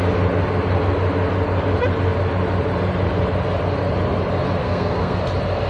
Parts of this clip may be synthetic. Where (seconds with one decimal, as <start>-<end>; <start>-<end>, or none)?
4.6-5.2